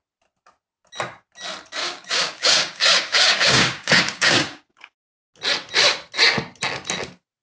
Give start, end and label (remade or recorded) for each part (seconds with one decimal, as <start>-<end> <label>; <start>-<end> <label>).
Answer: 0.0-1.8 recorded; 1.8-5.1 remade; 5.1-7.4 recorded

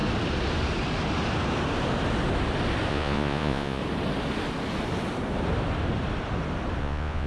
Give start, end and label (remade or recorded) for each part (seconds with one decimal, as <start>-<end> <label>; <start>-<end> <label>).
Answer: 0.0-2.9 recorded; 2.9-3.8 remade; 3.8-6.8 recorded; 6.8-7.3 remade